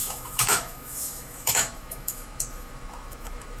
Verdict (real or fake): fake